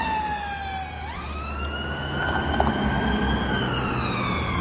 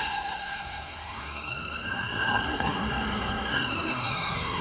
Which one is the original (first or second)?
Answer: first